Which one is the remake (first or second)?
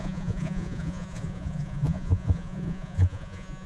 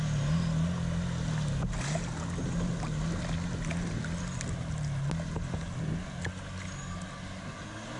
first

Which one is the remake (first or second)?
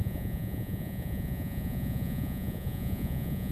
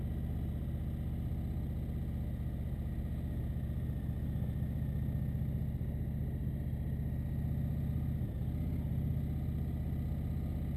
first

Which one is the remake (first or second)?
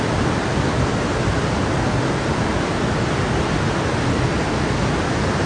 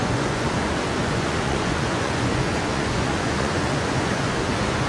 second